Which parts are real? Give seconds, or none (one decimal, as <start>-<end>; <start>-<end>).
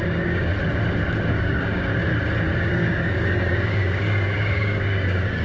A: 0.5-1.3; 2.1-2.7